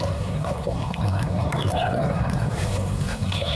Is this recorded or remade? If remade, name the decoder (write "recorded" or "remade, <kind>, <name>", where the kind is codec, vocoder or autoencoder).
remade, codec, SNAC